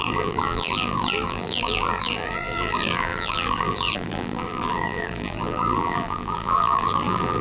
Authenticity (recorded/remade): remade